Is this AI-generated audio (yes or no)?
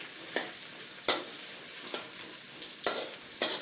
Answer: no